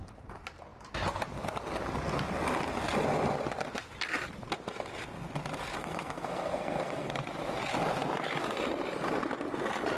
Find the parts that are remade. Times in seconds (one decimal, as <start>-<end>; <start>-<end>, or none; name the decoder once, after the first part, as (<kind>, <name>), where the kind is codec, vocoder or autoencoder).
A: 5.8-7.1 (codec, SNAC)

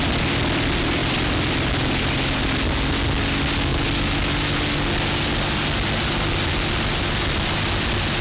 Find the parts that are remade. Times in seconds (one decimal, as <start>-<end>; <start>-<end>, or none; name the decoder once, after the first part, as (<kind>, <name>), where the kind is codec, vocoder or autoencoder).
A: none

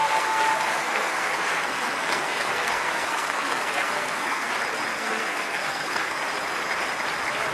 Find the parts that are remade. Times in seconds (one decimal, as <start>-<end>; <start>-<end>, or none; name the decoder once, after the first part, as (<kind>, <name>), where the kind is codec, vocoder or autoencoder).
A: 0.0-4.5 (codec, SNAC); 4.9-6.2

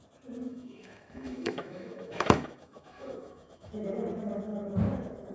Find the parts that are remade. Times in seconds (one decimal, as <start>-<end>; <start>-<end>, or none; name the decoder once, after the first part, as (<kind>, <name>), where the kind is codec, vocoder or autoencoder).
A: 0.5-3.7 (autoencoder, DAC-VAE)